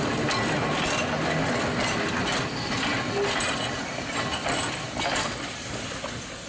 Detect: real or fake real